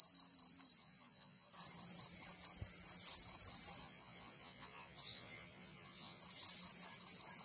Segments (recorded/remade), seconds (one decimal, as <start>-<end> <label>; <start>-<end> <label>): 0.0-0.8 recorded; 0.8-1.5 remade; 1.5-3.8 recorded; 3.8-6.2 remade; 6.2-7.4 recorded